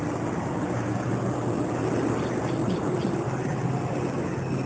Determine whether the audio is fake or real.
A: real